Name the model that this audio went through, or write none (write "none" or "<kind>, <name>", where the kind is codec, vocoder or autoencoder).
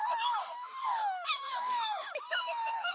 autoencoder, DAC-VAE